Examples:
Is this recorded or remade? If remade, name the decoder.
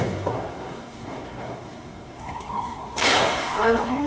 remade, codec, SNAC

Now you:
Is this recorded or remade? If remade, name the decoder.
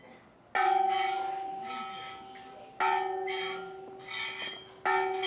recorded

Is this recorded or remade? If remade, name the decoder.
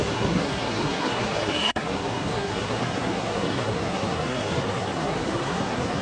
remade, codec, SNAC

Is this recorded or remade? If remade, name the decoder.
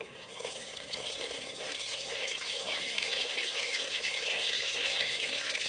remade, codec, SNAC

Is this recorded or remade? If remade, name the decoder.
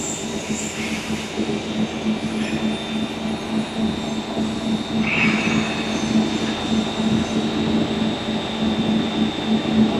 recorded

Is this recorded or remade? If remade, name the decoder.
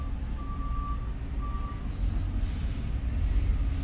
recorded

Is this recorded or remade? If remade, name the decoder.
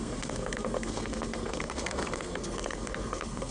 remade, codec, SNAC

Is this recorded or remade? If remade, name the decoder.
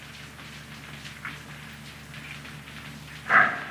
recorded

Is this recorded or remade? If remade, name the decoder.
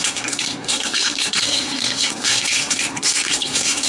remade, codec, SNAC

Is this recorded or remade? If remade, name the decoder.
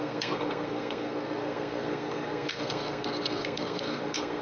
remade, codec, SNAC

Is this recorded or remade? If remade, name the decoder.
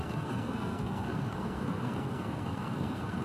remade, codec, SNAC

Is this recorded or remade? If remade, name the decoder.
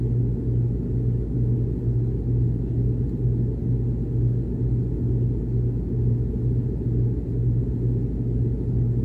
recorded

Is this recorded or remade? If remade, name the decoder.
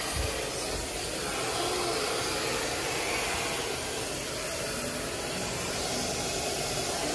recorded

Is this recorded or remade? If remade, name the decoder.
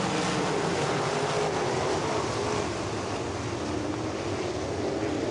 recorded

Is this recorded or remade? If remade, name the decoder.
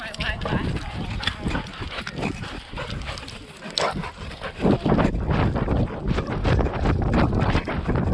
recorded